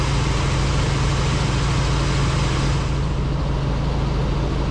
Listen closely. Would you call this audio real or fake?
real